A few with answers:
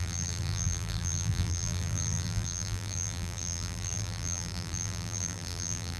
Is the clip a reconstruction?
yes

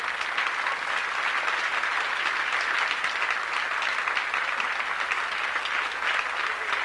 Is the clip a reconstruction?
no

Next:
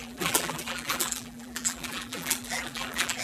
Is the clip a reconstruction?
yes